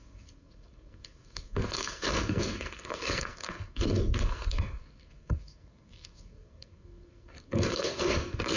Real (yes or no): no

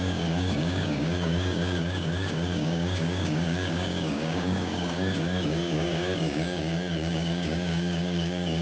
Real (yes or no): no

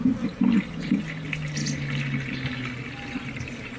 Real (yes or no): yes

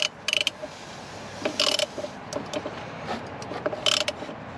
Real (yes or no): yes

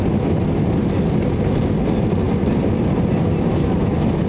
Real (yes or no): yes